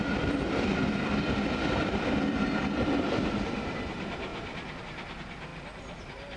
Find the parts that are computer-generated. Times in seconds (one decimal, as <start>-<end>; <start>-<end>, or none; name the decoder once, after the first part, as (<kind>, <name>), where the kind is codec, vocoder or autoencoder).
none